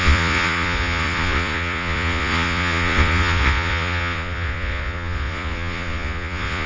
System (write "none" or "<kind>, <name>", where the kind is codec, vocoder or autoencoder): vocoder, Vocos